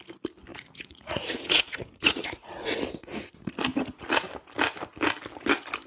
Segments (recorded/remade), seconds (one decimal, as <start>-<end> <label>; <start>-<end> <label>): 0.0-0.5 recorded; 0.5-2.8 remade; 2.8-5.9 recorded